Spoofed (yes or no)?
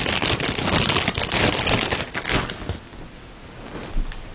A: no